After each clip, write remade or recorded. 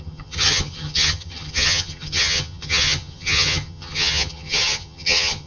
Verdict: remade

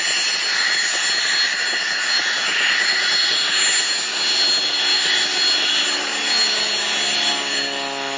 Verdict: recorded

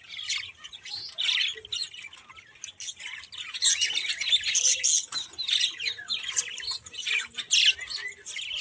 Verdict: recorded